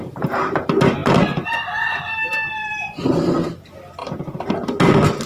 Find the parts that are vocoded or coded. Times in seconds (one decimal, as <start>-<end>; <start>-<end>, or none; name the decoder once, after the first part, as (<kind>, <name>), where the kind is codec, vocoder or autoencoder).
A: none